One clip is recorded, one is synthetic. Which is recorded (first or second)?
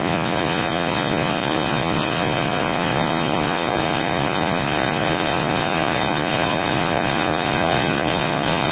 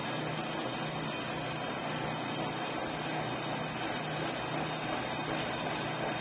second